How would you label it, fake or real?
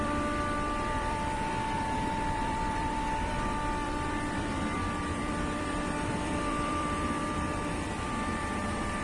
fake